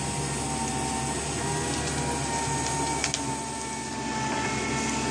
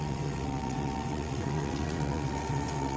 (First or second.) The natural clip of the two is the first